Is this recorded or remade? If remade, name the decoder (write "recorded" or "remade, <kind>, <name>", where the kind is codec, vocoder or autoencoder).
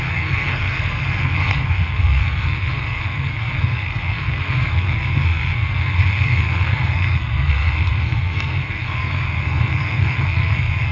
remade, codec, SNAC